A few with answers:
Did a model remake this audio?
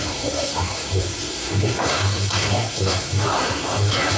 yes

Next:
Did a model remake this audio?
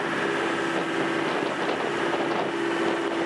no